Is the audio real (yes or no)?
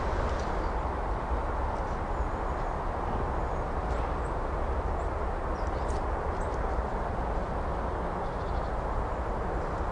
yes